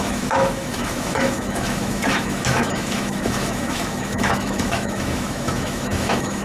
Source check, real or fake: fake